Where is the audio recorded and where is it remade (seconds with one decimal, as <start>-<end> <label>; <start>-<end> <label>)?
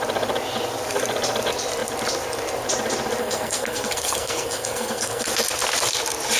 0.0-3.2 recorded; 3.2-5.3 remade; 5.3-6.4 recorded